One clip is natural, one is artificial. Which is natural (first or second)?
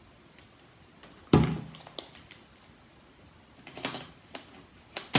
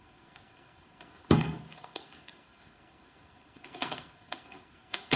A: first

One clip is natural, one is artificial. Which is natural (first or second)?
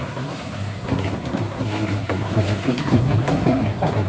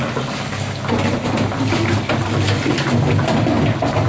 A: second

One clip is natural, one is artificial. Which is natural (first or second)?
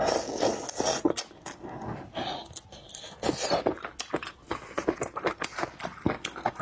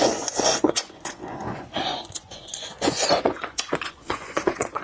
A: first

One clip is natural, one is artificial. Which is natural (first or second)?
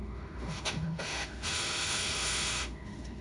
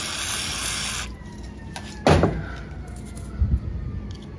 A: second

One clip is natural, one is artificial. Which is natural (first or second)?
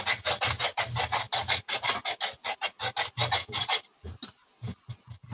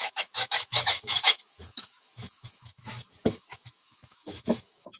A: first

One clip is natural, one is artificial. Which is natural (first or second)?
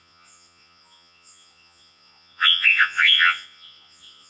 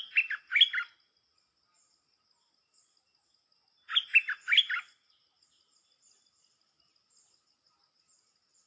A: second